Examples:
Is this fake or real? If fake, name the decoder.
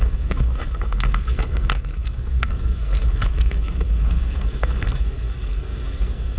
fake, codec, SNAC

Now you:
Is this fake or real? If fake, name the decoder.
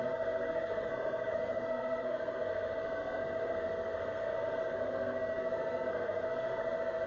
fake, codec, SNAC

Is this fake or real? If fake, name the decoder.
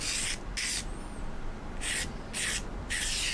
real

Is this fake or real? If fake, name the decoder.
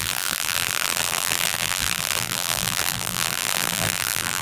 fake, vocoder, BigVGAN v2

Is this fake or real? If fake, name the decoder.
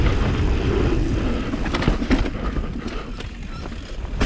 real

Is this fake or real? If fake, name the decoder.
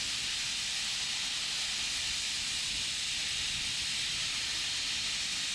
real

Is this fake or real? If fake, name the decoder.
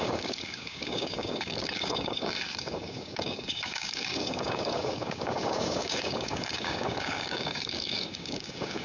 fake, codec, DAC